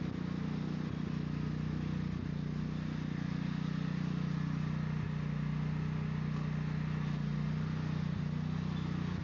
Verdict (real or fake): real